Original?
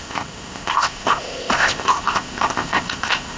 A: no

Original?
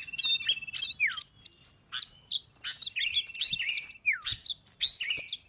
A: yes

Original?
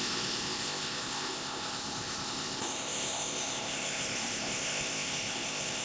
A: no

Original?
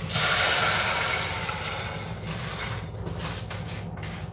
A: yes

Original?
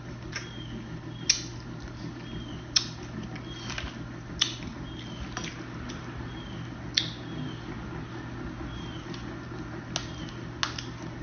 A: yes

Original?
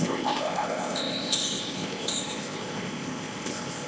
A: no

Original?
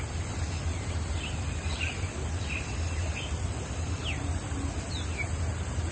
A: yes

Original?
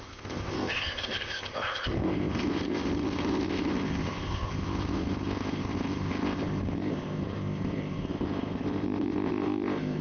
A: no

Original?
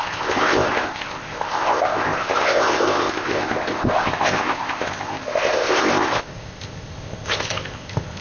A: no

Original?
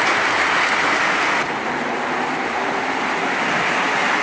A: yes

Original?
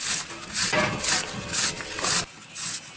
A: yes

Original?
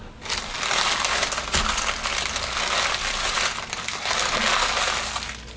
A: yes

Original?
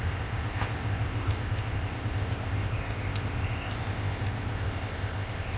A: no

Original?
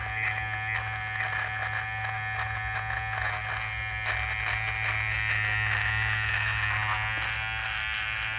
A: yes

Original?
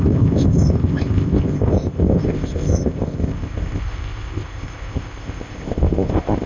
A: no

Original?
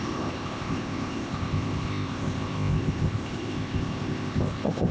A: no